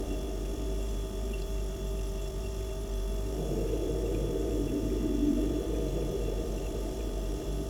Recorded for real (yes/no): no